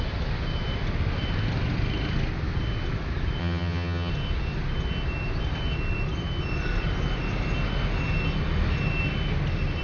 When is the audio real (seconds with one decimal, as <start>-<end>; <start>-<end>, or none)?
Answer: 0.0-3.4; 4.1-9.8